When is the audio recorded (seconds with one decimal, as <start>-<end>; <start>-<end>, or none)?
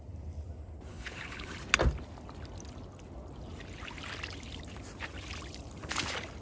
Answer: 0.0-0.9; 1.5-6.4